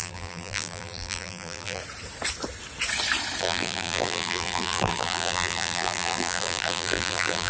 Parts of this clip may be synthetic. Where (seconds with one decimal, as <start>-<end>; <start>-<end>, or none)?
0.0-1.8; 3.4-7.5